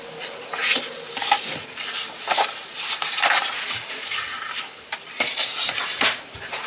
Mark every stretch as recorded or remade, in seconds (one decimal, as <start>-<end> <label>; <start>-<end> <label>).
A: 0.0-6.7 recorded